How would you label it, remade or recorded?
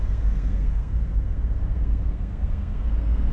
remade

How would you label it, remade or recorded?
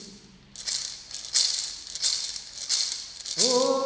recorded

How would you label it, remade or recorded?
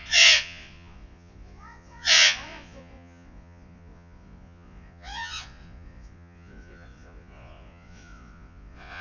remade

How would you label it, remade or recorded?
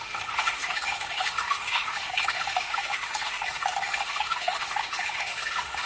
remade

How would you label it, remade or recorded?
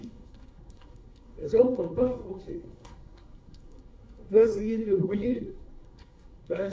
remade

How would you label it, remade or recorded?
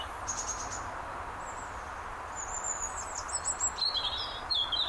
recorded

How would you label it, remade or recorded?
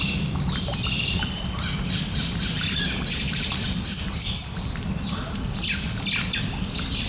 recorded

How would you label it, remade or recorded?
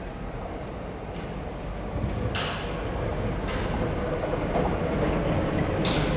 recorded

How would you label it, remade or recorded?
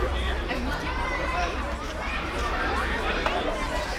remade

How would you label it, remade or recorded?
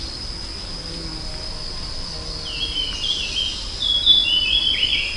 recorded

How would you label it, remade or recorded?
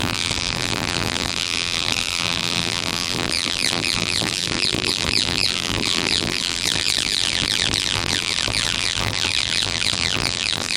remade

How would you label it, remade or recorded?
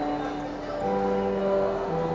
recorded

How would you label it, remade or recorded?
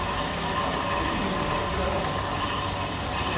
recorded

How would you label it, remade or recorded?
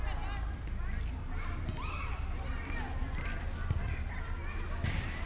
recorded